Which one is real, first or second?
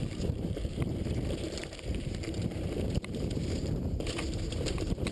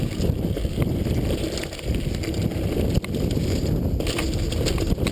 second